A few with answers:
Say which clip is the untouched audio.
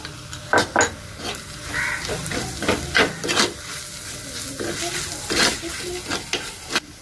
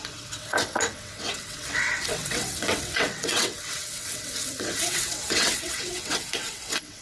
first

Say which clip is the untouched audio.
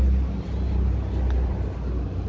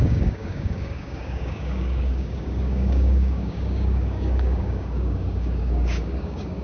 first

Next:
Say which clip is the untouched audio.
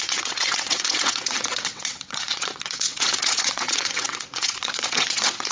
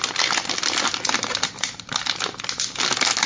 second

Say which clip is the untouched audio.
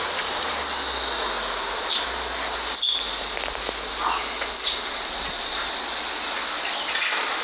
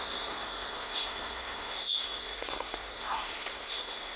first